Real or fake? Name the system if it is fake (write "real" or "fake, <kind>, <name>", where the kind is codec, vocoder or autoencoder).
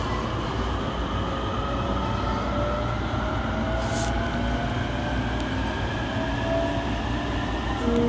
real